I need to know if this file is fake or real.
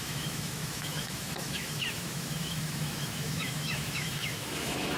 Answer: fake